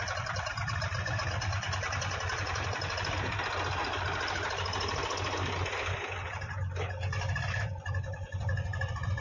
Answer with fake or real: real